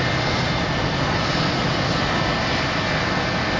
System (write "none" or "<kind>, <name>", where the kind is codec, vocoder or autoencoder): none